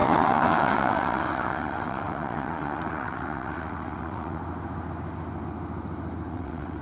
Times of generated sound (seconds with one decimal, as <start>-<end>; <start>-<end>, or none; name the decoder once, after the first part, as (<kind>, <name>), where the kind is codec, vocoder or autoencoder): 0.0-4.4 (vocoder, WaveNeXt); 6.3-6.8